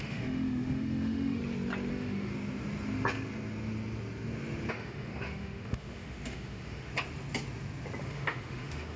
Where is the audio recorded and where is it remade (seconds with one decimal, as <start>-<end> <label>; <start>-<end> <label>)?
0.0-1.4 remade; 1.4-1.9 recorded; 1.9-2.3 remade; 2.3-4.7 recorded; 4.7-6.9 remade; 6.9-8.0 recorded; 8.0-9.0 remade